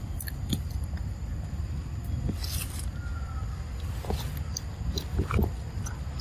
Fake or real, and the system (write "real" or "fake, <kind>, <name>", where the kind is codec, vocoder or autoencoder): real